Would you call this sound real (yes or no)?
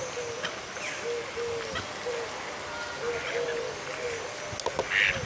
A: yes